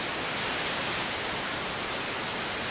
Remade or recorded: recorded